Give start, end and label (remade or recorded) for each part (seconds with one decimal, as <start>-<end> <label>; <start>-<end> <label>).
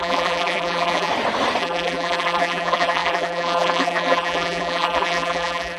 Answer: 0.0-1.1 remade; 1.1-1.6 recorded; 1.6-5.8 remade